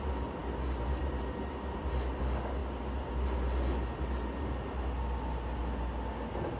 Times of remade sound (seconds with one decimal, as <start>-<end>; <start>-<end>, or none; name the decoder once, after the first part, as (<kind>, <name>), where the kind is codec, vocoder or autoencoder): none